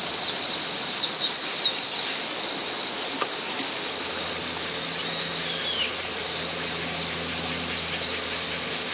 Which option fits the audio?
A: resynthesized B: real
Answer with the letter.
B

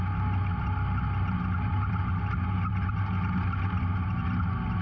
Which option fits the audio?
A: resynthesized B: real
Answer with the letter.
B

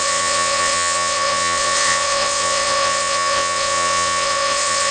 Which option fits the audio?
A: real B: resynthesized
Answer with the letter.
B